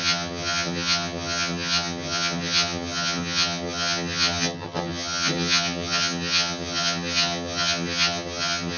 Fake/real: fake